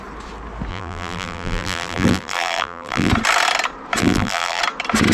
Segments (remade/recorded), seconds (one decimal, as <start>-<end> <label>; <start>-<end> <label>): 0.0-0.7 recorded; 0.7-3.1 remade; 3.1-4.0 recorded; 4.0-4.6 remade; 4.6-5.1 recorded